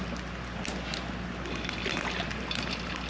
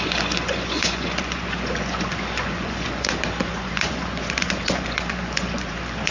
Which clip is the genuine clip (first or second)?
first